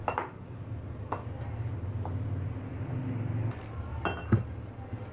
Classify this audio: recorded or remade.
recorded